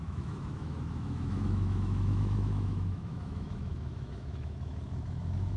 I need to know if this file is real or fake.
fake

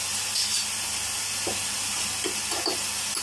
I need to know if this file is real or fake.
real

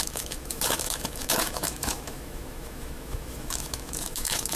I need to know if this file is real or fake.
fake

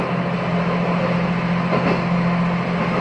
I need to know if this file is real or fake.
real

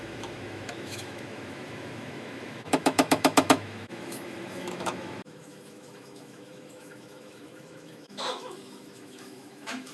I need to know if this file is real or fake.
fake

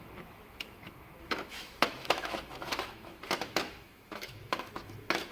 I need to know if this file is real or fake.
fake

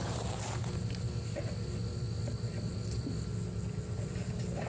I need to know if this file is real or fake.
real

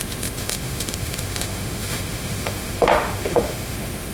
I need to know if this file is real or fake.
fake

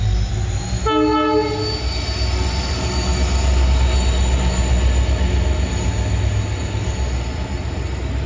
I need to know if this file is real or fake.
real